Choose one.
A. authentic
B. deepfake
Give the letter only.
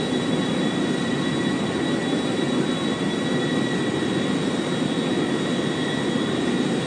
A